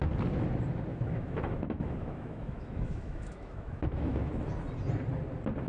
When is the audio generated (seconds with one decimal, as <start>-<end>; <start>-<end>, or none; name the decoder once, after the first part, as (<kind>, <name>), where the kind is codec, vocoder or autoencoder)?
0.9-4.3 (autoencoder, DAC-VAE)